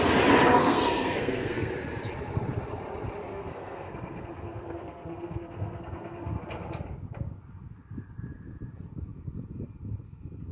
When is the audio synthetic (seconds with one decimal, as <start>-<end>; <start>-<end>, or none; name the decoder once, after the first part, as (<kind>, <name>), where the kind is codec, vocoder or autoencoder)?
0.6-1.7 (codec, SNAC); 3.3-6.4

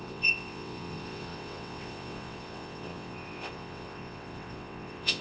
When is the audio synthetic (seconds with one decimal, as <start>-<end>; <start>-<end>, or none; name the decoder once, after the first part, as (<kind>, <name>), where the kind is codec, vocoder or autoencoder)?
0.0-5.2 (vocoder, WaveNeXt)

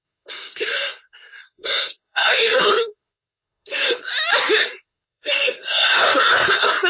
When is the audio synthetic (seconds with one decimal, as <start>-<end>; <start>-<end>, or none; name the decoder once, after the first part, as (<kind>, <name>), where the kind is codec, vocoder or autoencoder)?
0.0-4.1 (codec, SNAC); 4.6-6.9